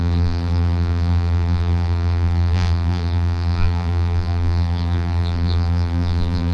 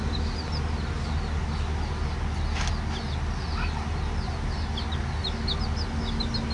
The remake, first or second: first